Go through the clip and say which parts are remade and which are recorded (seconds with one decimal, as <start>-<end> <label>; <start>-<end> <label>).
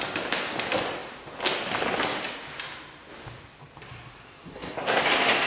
0.0-4.2 recorded; 4.2-5.0 remade; 5.0-5.5 recorded